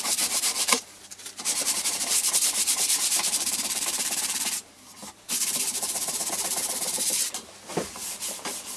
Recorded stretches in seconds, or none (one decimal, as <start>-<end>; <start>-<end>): none